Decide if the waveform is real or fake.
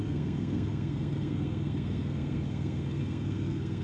fake